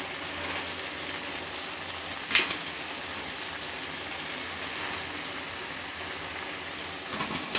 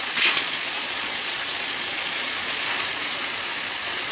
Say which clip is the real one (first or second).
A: first